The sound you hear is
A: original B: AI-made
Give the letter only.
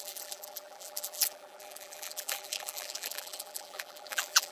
B